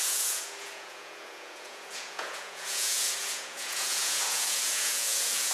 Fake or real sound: fake